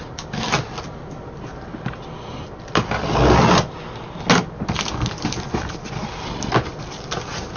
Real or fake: real